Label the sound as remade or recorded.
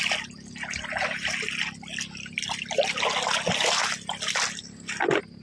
recorded